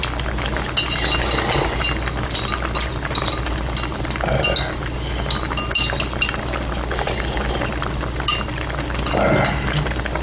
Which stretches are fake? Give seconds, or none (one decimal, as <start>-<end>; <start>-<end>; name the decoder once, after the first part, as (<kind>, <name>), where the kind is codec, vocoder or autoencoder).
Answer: none

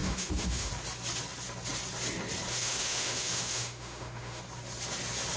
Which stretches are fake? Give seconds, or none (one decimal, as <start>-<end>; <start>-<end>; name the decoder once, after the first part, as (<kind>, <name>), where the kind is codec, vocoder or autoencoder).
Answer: 0.0-0.7 (autoencoder, DAC-VAE); 2.5-4.4

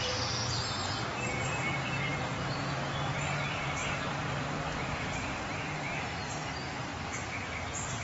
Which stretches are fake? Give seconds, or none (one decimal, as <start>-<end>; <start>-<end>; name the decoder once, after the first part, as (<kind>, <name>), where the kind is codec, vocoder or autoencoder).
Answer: 0.0-0.4 (vocoder, BigVGAN v2); 1.2-6.9; 7.6-8.0

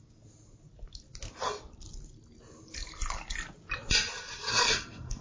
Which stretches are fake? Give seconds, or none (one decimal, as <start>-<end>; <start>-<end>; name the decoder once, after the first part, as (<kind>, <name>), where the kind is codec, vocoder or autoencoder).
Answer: 4.5-5.2 (codec, SNAC)

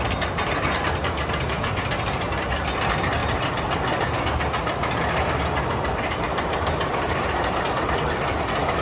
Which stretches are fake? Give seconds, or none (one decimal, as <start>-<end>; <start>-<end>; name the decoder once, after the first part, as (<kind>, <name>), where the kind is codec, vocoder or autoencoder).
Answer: none

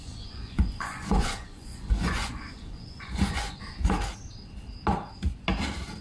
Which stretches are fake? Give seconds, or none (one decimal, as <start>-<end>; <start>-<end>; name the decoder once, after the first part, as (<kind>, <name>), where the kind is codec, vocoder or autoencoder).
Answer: 0.0-3.6 (vocoder, Vocos)

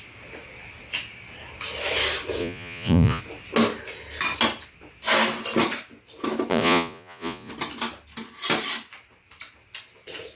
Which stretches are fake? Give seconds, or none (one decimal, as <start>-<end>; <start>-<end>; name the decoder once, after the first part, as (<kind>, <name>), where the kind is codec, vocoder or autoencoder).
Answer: 2.4-3.2 (vocoder, Vocos); 6.5-7.5

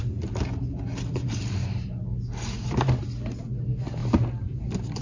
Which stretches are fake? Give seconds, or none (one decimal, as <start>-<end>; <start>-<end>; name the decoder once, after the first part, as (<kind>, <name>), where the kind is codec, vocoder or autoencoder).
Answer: none